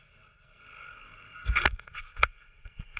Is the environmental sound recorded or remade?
remade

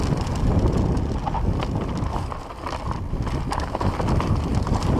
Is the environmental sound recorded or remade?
recorded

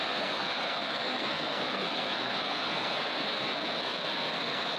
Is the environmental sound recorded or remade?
remade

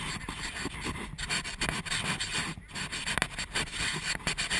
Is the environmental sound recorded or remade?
recorded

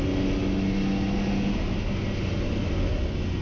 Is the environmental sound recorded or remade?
recorded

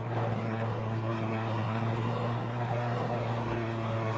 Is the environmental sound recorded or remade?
remade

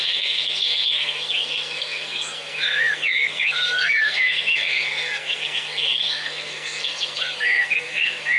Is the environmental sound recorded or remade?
remade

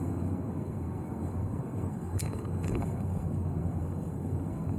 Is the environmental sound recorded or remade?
remade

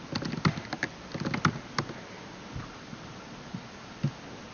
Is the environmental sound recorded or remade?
recorded